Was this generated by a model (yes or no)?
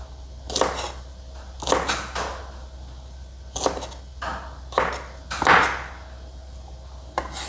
no